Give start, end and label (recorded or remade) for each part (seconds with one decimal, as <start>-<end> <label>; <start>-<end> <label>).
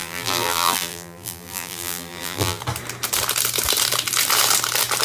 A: 0.0-2.6 remade; 2.6-5.0 recorded